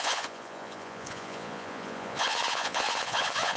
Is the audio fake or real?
fake